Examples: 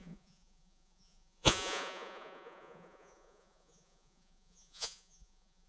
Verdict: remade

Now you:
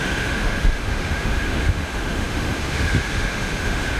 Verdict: remade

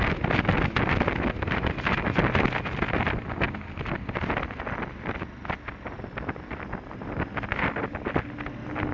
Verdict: recorded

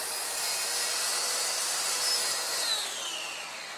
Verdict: recorded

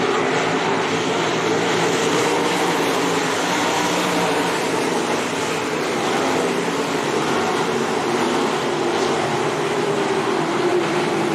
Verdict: remade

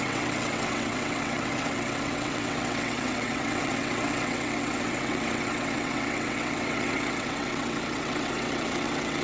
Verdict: remade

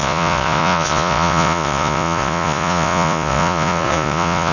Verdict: remade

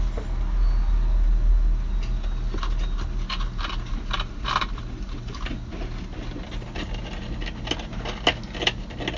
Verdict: recorded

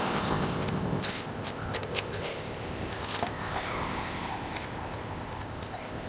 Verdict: remade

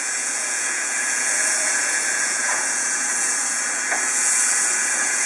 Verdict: remade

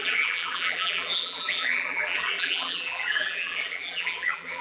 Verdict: remade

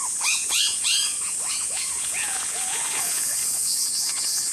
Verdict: remade